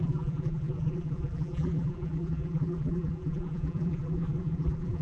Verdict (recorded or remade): remade